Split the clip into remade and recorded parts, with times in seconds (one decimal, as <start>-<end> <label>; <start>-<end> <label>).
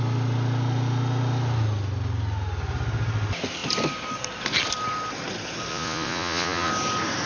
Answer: 0.0-5.7 recorded; 5.7-6.7 remade; 6.7-7.3 recorded